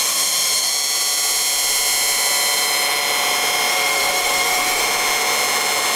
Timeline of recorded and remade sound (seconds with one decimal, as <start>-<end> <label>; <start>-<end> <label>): 0.0-0.7 remade; 0.7-3.7 recorded; 3.7-4.8 remade; 4.8-6.0 recorded